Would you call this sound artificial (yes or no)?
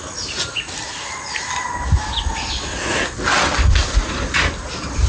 no